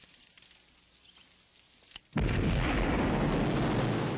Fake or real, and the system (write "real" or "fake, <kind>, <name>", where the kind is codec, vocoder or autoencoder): real